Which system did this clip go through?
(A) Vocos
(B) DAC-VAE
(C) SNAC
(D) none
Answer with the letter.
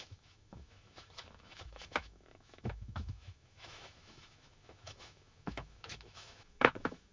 B